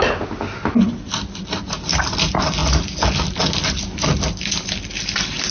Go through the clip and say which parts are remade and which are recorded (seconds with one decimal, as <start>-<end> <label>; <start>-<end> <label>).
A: 0.0-5.5 recorded